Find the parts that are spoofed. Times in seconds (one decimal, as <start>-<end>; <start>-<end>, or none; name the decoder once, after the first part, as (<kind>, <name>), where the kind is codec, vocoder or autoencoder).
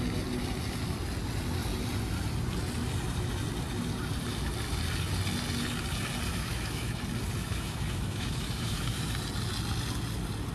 6.3-7.0 (autoencoder, DAC-VAE); 7.4-9.1